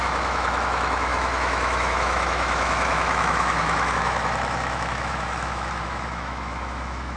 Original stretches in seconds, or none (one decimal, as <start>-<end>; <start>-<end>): none

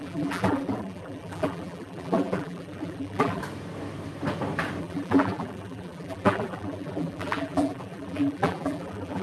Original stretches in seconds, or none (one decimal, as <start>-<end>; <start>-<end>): 3.4-4.8